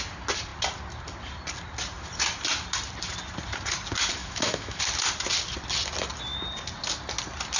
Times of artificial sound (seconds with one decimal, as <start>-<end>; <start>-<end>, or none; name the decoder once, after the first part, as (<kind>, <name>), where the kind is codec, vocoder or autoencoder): 4.2-4.8 (autoencoder, DAC-VAE)